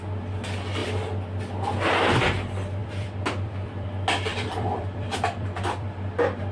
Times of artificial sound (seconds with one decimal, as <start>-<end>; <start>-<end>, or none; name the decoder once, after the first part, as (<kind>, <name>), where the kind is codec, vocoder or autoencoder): 2.8-3.9 (vocoder, BigVGAN v2); 4.3-5.9